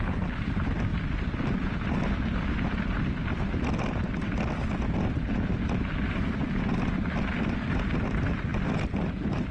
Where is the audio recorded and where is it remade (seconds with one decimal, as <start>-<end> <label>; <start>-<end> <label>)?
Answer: 0.0-9.5 recorded